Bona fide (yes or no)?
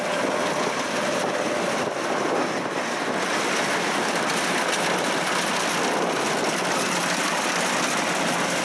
yes